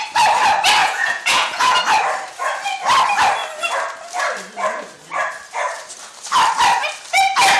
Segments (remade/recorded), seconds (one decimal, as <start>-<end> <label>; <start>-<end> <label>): 0.0-0.8 recorded; 0.8-1.8 remade; 1.8-7.6 recorded